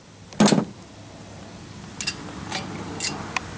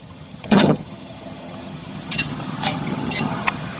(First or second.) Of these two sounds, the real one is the first